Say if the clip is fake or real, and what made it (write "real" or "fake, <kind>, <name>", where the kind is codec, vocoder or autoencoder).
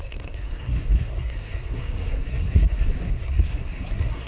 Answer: fake, codec, SNAC